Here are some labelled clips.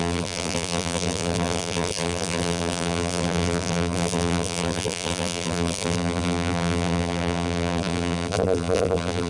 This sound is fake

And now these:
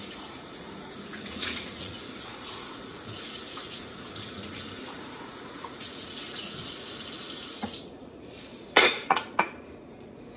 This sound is fake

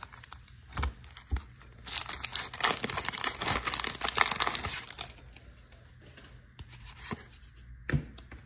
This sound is real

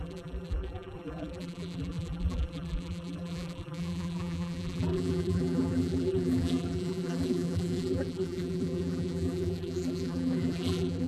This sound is fake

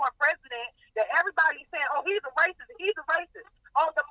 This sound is real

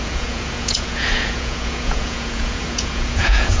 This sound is fake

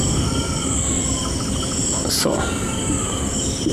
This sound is real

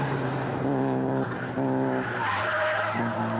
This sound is real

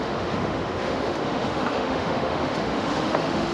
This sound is fake